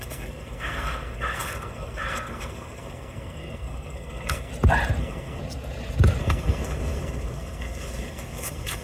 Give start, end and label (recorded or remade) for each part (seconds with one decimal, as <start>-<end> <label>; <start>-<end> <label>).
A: 0.0-4.5 remade; 4.5-5.0 recorded; 5.0-5.4 remade; 5.4-6.2 recorded; 6.2-8.8 remade